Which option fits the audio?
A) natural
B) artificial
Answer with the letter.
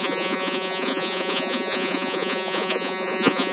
B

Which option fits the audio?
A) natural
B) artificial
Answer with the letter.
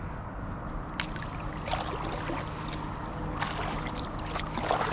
A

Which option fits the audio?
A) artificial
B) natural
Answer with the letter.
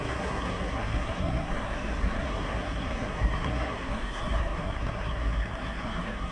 A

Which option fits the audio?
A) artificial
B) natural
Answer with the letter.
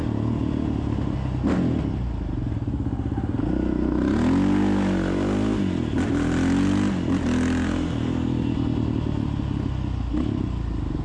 B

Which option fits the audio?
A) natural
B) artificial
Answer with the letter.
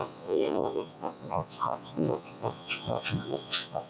B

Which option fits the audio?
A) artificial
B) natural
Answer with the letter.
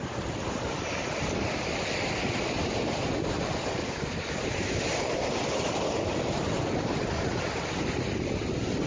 B